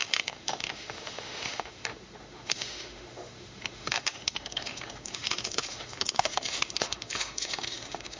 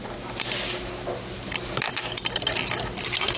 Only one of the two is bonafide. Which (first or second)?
second